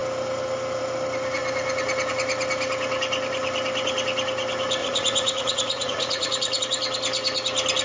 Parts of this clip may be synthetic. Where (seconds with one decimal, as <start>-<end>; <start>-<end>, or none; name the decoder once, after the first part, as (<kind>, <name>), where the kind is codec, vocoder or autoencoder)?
4.8-6.6 (vocoder, Vocos)